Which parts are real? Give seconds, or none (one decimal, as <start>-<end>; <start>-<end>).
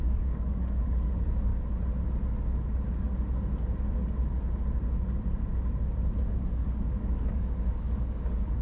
1.5-6.3